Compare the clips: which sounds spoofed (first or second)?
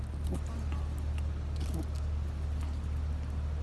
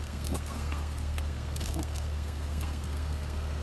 second